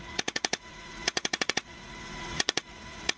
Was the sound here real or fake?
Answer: fake